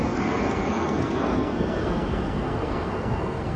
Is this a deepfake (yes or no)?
yes